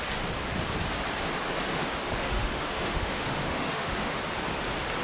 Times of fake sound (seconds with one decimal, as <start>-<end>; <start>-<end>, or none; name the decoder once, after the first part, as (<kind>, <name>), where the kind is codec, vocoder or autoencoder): 1.7-4.2 (autoencoder, DAC-VAE)